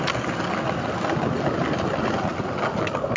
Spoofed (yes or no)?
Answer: no